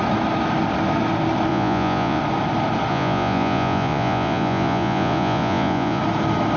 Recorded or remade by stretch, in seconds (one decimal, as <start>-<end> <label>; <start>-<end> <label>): 0.0-1.5 recorded; 1.5-2.2 remade; 2.2-2.9 recorded; 2.9-6.0 remade; 6.0-6.6 recorded